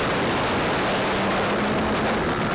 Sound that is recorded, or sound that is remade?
recorded